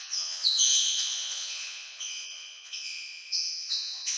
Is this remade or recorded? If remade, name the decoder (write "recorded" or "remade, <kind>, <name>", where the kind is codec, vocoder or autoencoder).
remade, vocoder, Vocos